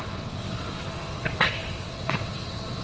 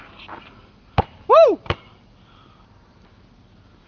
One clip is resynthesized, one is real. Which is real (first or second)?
second